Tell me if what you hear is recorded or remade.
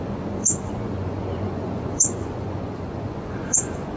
remade